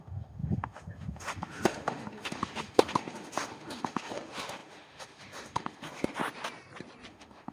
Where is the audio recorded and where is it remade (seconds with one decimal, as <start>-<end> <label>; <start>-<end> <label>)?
0.0-6.2 remade; 6.2-7.1 recorded; 7.1-7.5 remade